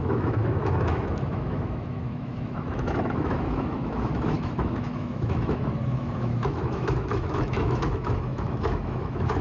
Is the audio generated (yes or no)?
yes